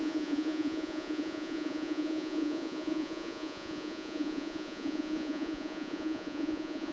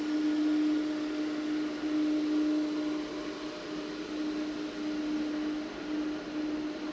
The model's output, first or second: first